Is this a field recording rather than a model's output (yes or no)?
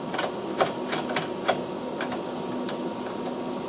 yes